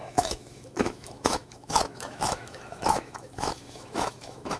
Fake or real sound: fake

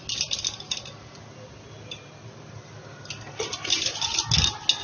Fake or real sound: real